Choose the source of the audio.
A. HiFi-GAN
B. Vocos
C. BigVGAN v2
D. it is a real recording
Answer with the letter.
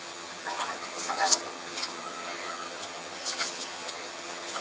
A